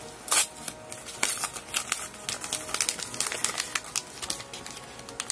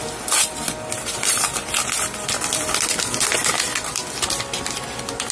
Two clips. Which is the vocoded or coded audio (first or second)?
second